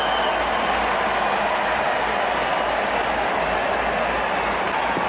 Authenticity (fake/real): real